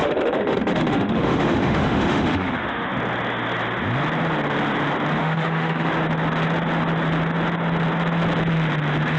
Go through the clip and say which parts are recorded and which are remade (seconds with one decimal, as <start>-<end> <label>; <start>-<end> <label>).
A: 0.0-2.9 remade; 2.9-5.2 recorded; 5.2-5.9 remade; 5.9-9.2 recorded